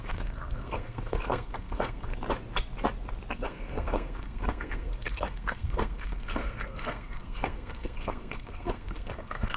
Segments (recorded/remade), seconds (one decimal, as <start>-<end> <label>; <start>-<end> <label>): 0.0-2.1 remade; 2.1-3.3 recorded; 3.3-9.6 remade